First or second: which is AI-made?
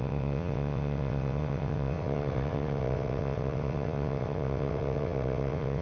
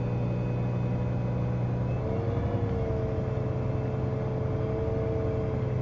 first